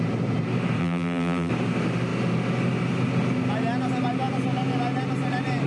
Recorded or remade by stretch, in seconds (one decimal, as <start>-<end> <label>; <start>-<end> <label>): 0.0-0.8 recorded; 0.8-1.5 remade; 1.5-5.7 recorded